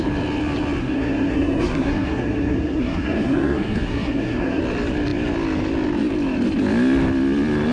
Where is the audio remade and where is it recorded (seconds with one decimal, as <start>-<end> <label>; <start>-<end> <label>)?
0.0-0.8 recorded; 0.8-4.6 remade; 4.6-7.7 recorded